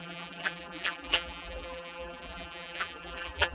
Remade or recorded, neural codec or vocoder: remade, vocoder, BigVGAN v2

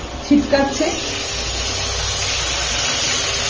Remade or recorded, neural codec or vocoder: recorded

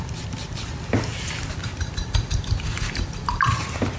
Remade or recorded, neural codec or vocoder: remade, vocoder, BigVGAN v2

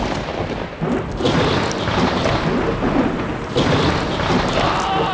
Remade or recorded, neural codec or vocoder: recorded